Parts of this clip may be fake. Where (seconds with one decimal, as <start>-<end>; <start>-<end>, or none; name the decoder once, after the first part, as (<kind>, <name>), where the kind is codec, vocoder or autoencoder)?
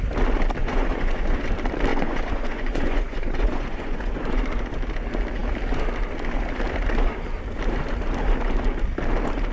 0.6-1.5 (vocoder, Vocos); 1.9-4.4